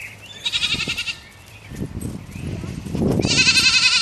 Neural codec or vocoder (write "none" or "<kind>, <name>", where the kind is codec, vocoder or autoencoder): vocoder, BigVGAN v2